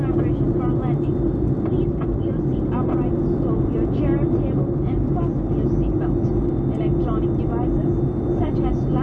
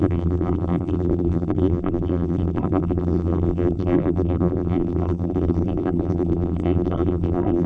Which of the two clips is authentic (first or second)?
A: first